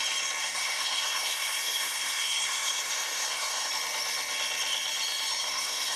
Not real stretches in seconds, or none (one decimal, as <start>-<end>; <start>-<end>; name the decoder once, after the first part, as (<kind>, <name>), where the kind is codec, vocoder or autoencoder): 0.4-3.7 (codec, SNAC); 5.4-6.0